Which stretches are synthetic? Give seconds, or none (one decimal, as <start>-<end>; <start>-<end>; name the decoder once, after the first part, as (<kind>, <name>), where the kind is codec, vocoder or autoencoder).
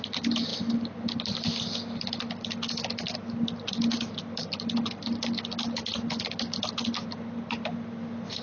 none